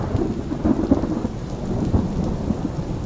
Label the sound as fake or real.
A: real